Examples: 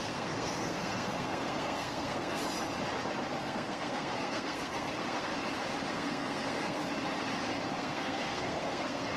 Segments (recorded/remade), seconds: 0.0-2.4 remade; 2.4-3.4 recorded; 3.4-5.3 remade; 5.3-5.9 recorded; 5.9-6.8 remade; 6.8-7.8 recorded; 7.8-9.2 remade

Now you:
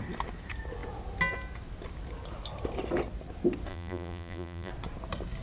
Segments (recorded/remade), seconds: 0.0-3.7 recorded; 3.7-4.7 remade; 4.7-5.4 recorded

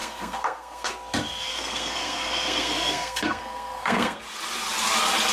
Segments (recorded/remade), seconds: 0.0-0.9 remade; 0.9-1.5 recorded; 1.5-4.2 remade; 4.2-5.3 recorded

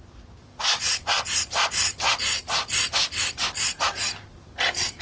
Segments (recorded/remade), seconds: 0.0-5.0 recorded

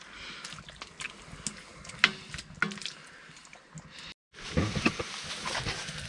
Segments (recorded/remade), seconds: 0.0-6.1 recorded

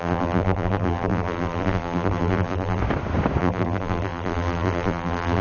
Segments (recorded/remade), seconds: 0.0-2.8 remade; 2.8-3.4 recorded; 3.4-5.4 remade

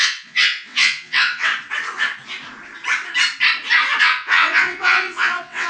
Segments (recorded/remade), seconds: 0.0-1.5 remade; 1.5-4.0 recorded; 4.0-5.7 remade